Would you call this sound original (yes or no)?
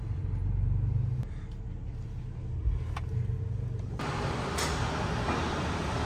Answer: yes